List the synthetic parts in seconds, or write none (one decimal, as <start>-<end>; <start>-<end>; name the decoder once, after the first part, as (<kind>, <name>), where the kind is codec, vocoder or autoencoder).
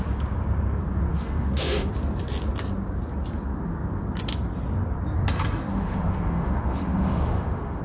1.1-1.9 (autoencoder, DAC-VAE); 5.7-7.8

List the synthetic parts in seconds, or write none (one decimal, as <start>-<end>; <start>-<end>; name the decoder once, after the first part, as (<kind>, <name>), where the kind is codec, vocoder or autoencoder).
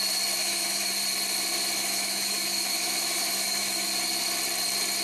0.4-0.9 (autoencoder, DAC-VAE); 1.8-3.9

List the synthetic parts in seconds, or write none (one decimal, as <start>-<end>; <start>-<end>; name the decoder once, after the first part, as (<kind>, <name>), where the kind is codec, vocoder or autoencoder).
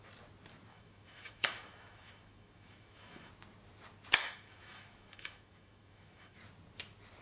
0.7-3.3 (autoencoder, DAC-VAE); 4.2-6.4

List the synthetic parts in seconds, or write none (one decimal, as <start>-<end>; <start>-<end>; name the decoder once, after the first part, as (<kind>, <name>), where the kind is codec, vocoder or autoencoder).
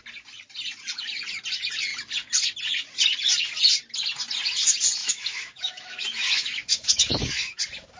5.0-7.6 (autoencoder, DAC-VAE)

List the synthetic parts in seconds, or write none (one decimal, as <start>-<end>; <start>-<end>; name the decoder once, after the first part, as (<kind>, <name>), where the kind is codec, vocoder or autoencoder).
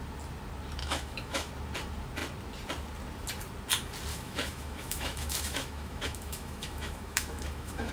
0.8-1.5 (autoencoder, DAC-VAE); 4.1-7.9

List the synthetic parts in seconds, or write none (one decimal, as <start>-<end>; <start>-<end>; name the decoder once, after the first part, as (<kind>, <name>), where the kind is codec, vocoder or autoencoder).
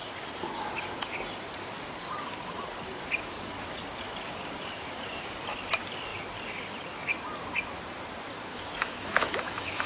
8.5-9.9 (autoencoder, DAC-VAE)